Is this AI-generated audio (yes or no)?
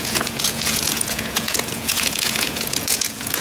yes